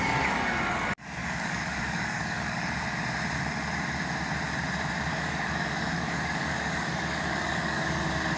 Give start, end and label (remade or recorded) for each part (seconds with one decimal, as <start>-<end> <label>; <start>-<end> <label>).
0.0-1.2 recorded; 1.2-2.7 remade; 2.7-5.1 recorded; 5.1-8.0 remade; 8.0-8.4 recorded